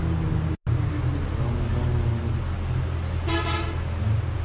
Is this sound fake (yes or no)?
no